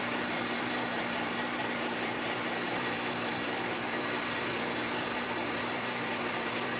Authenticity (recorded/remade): remade